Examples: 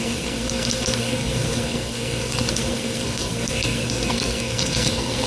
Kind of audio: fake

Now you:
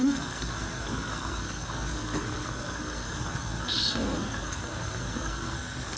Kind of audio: fake